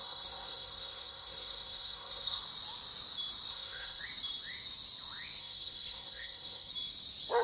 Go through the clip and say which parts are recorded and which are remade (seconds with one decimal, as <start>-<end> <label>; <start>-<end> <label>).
0.0-2.4 remade; 2.4-3.5 recorded; 3.5-4.0 remade; 4.0-5.4 recorded; 5.4-6.7 remade; 6.7-7.4 recorded